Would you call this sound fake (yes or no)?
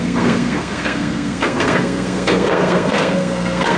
yes